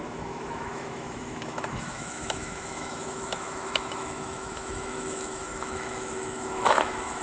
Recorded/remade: remade